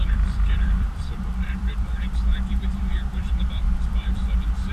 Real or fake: fake